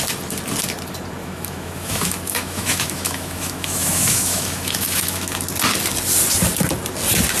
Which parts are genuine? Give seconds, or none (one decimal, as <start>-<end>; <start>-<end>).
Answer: 0.0-1.2; 5.4-7.4

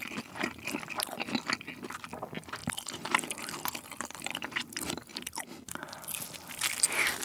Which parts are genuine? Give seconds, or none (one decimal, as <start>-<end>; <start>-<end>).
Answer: 0.0-7.2

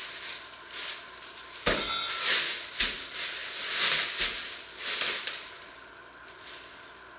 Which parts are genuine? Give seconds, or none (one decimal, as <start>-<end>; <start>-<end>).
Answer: 0.0-7.2

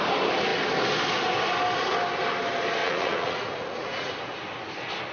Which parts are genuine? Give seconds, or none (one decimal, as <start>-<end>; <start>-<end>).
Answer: 0.0-2.8; 4.1-5.1

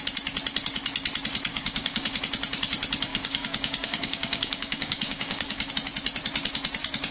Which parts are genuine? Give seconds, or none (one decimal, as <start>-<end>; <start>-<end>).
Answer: 0.0-1.5; 2.2-3.1; 5.7-7.1

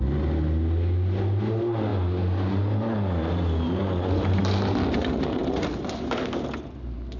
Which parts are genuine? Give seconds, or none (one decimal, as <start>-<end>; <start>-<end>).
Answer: 0.0-7.2

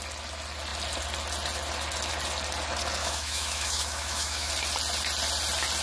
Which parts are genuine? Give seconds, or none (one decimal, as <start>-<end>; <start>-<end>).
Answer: 0.0-3.0; 4.5-5.8